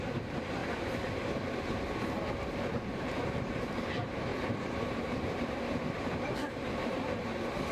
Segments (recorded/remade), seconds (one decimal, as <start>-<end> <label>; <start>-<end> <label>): 0.0-0.6 remade; 0.6-2.6 recorded; 2.6-7.7 remade